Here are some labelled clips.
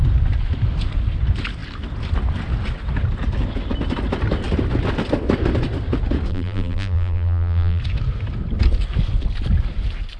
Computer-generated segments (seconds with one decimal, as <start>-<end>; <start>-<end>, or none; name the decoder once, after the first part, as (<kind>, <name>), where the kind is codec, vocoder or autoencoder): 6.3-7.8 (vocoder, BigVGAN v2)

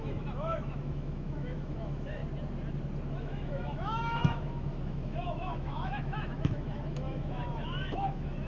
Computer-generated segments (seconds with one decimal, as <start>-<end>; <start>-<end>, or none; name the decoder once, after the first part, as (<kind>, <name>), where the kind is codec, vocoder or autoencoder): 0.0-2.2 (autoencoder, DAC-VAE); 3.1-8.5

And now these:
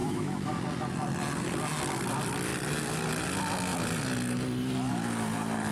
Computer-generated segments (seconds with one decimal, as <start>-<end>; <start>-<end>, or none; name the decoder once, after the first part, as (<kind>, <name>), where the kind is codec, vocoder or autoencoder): 0.0-0.6 (autoencoder, DAC-VAE)

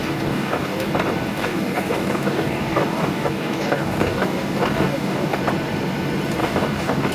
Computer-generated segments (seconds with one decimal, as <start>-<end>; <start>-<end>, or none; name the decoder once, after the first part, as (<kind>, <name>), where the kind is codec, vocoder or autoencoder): 0.0-0.9 (codec, DAC); 1.3-5.4; 6.4-7.1

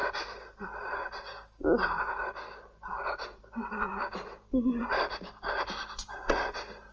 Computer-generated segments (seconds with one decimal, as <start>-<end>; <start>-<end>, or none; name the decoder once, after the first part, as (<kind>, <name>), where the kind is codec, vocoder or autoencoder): none

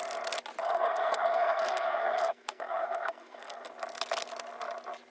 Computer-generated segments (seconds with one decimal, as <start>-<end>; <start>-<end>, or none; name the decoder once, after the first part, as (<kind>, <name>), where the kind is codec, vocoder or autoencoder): 0.6-3.7 (codec, SNAC)

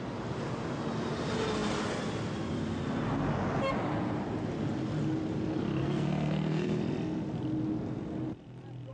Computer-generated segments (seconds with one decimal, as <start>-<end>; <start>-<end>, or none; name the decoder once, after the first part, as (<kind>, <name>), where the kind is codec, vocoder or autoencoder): 5.8-6.8 (codec, SNAC)

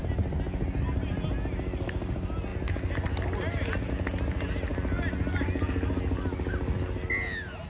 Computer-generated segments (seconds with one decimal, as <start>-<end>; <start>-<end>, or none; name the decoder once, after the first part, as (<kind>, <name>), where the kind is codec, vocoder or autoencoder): none